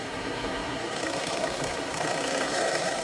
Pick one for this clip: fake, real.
fake